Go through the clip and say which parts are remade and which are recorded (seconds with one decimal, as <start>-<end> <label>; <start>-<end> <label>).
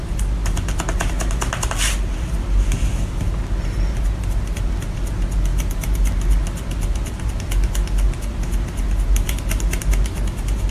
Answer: 0.0-10.7 recorded